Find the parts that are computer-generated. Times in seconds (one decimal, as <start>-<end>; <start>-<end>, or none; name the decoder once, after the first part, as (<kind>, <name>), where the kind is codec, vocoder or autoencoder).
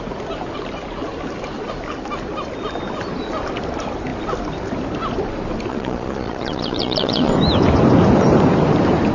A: 5.7-7.3 (vocoder, Vocos)